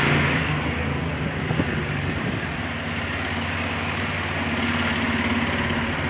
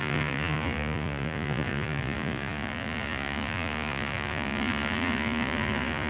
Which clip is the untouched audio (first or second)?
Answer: first